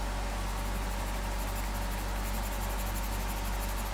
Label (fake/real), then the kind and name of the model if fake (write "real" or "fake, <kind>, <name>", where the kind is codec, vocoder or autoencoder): real